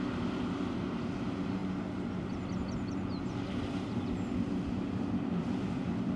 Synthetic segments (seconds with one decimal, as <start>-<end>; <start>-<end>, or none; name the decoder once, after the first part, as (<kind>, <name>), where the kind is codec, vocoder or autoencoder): 0.0-1.6 (vocoder, BigVGAN v2); 4.6-6.2